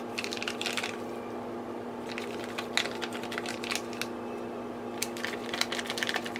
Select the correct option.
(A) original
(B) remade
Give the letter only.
A